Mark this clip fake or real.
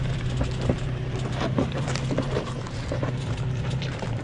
fake